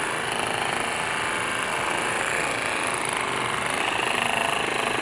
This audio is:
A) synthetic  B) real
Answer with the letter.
B